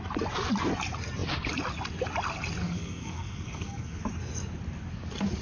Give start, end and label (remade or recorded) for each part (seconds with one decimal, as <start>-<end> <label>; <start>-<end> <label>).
0.0-2.6 recorded; 2.6-4.0 remade; 4.0-5.4 recorded